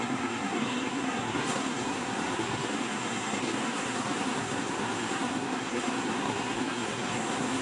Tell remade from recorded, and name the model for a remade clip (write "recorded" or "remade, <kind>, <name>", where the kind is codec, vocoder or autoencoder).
remade, codec, SNAC